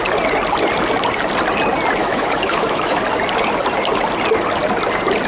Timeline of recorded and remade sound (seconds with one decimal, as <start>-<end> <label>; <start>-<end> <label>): 0.0-2.0 recorded; 2.0-3.0 remade; 3.0-5.3 recorded